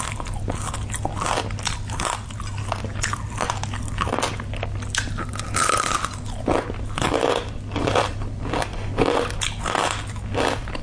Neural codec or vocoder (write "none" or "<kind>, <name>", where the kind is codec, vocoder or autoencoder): none